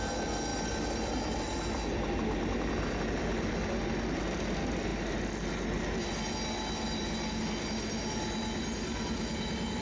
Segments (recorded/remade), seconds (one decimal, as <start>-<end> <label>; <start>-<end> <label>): 0.0-9.8 recorded